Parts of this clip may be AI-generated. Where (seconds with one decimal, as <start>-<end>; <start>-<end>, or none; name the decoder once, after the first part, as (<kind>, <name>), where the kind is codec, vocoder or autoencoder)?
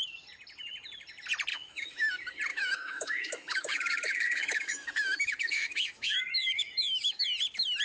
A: 1.5-2.1 (autoencoder, DAC-VAE); 2.5-7.2